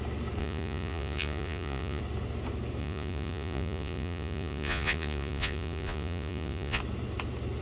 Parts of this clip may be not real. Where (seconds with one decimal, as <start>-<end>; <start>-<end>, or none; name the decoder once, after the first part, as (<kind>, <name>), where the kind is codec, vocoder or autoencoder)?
0.4-2.0 (vocoder, Vocos); 2.8-6.8